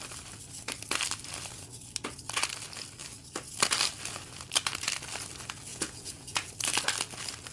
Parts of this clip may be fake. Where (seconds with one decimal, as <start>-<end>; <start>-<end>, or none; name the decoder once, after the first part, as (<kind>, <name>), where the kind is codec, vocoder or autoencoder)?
5.7-6.5 (vocoder, Vocos)